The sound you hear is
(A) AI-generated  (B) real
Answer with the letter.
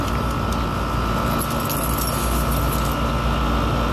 B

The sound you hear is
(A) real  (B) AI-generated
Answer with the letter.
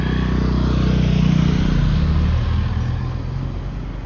A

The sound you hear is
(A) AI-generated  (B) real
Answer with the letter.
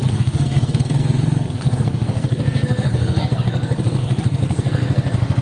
A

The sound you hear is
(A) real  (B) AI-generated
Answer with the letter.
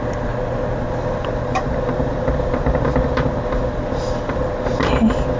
A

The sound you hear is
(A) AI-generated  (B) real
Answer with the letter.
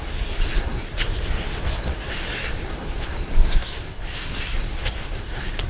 A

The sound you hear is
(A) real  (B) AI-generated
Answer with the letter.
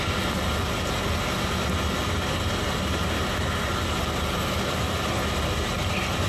A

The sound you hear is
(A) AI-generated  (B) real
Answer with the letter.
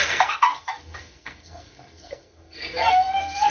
A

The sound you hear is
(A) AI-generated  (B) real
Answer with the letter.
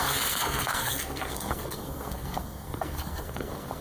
A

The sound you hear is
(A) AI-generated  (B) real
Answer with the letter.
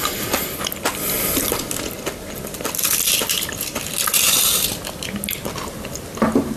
B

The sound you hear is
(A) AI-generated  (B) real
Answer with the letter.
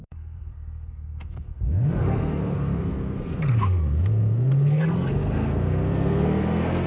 A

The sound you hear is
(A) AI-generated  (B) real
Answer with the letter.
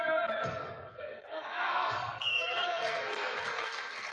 A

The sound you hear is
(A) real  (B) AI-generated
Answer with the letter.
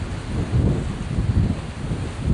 A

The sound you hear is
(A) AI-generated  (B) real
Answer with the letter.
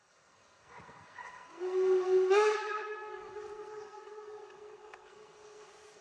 A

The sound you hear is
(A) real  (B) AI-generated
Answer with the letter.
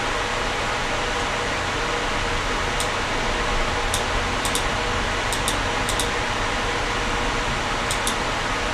A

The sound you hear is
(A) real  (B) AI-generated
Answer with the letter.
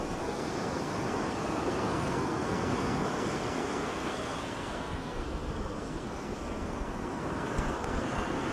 B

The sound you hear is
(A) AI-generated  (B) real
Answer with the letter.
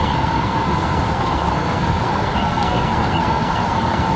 A